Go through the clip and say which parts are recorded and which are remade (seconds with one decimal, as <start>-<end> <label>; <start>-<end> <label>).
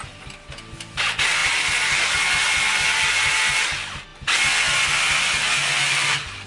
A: 0.0-6.5 recorded